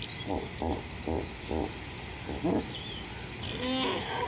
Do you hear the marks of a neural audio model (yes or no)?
no